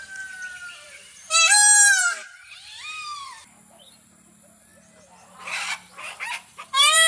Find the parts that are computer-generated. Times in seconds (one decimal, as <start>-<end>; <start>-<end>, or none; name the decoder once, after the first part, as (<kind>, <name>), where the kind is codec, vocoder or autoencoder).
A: 0.0-4.7 (vocoder, BigVGAN v2); 6.0-7.1

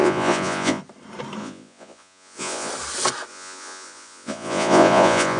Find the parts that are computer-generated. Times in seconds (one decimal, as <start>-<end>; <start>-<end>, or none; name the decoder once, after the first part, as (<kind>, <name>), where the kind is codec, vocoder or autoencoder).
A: 0.0-0.8 (vocoder, Vocos); 1.4-2.7; 3.3-5.4

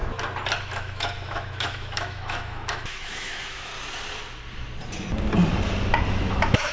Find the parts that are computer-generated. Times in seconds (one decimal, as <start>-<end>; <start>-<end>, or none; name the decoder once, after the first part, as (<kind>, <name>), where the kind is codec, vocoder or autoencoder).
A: 0.6-3.7 (autoencoder, DAC-VAE); 6.1-6.7

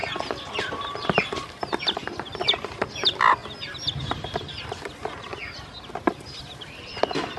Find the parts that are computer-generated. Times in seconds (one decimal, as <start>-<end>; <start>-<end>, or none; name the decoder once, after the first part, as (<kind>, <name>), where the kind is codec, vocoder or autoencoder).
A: 0.5-3.4 (vocoder, BigVGAN v2); 4.0-5.3; 5.9-7.4

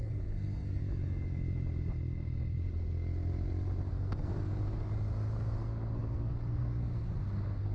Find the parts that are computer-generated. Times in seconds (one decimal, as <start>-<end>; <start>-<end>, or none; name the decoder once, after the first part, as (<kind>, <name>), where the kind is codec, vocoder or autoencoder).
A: 0.0-0.8 (codec, SNAC); 3.9-4.5; 5.6-7.7